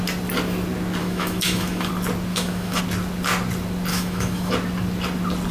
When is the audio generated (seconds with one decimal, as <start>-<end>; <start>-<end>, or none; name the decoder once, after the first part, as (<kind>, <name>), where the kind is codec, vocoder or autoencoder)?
1.0-1.9 (autoencoder, DAC-VAE); 2.3-2.8; 3.9-4.5